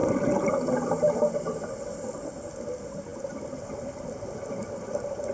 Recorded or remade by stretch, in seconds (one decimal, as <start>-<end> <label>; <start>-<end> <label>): 0.0-5.3 recorded

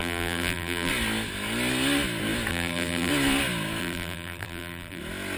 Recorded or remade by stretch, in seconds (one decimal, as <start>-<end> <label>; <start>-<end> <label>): 0.0-0.9 remade; 0.9-2.5 recorded; 2.5-3.1 remade; 3.1-3.8 recorded; 3.8-5.0 remade; 5.0-5.4 recorded